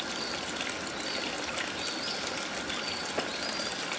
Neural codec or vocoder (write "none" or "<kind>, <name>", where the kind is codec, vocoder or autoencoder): none